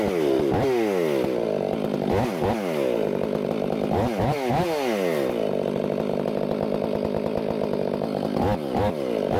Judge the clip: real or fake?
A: real